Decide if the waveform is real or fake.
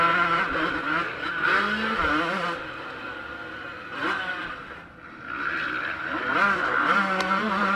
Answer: real